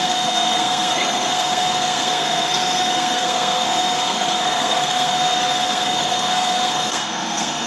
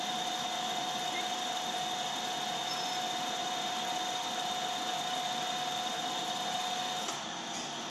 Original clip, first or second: second